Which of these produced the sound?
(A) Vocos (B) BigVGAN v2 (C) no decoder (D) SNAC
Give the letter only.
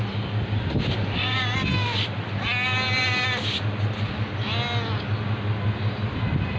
C